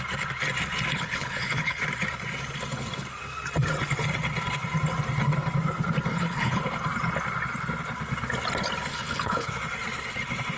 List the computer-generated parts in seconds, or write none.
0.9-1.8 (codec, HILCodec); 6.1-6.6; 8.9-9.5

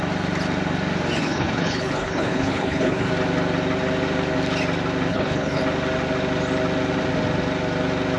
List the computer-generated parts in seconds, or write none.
1.2-3.1 (codec, HILCodec); 5.1-5.6

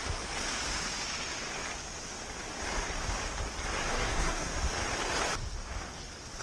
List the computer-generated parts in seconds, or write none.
3.9-4.5 (codec, SNAC)